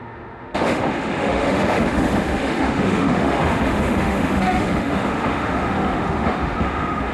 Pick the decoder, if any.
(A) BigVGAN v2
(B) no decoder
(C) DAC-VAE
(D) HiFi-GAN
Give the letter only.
C